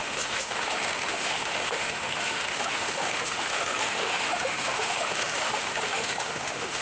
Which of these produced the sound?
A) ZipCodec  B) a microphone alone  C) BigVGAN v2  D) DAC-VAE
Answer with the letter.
D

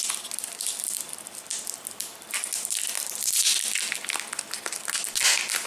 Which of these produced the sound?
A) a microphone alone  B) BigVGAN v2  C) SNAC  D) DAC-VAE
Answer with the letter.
A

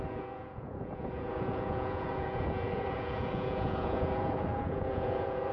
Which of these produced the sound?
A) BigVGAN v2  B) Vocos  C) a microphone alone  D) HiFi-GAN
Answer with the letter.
B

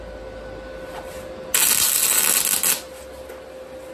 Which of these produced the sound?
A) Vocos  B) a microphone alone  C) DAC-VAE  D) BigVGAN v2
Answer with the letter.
B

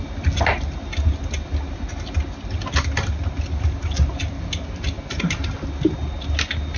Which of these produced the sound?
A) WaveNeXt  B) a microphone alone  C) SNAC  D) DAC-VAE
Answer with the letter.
B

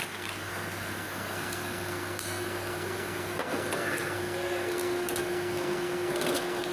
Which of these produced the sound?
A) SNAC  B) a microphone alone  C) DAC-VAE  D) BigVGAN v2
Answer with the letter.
A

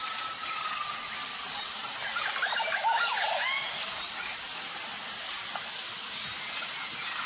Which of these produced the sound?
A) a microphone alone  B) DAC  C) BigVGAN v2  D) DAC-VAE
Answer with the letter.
A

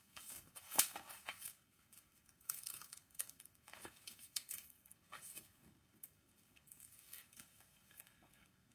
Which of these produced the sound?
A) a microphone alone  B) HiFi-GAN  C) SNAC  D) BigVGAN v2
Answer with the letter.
C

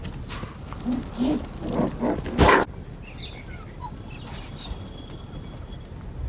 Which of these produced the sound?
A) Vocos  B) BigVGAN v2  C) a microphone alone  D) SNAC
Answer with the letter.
C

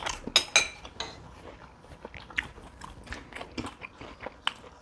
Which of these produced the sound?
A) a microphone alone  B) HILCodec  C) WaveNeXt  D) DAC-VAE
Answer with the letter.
A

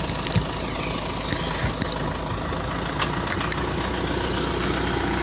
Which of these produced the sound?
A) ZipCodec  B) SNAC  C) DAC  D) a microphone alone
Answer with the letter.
D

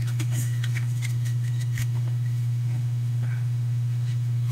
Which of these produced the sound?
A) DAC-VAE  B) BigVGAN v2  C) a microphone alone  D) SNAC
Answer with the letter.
A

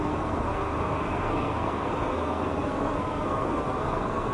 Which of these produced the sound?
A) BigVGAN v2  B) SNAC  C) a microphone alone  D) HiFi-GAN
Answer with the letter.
B